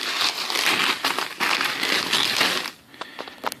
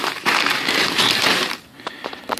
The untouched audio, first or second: first